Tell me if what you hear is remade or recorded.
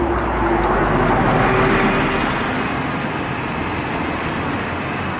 recorded